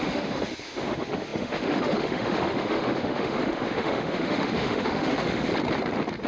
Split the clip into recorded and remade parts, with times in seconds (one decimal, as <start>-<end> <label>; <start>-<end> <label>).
0.0-5.5 remade; 5.5-6.3 recorded